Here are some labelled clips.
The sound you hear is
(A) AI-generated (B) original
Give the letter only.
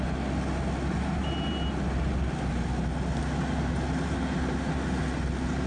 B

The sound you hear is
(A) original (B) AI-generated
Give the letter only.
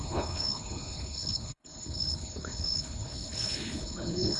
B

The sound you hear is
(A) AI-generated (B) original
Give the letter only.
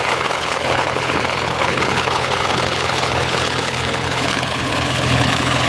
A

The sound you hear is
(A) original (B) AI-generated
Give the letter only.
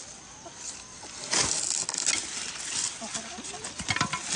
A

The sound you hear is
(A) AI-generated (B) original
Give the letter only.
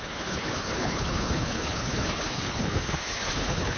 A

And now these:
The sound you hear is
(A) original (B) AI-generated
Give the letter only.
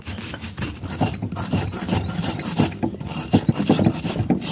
A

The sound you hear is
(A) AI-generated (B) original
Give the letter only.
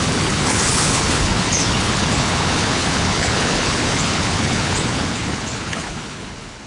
A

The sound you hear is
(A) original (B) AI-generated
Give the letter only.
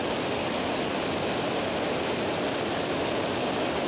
A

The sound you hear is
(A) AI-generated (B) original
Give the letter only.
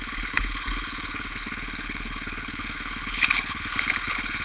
A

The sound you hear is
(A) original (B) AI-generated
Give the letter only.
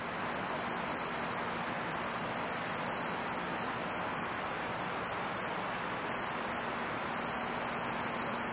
A